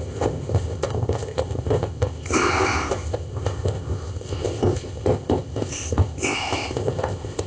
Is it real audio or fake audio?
fake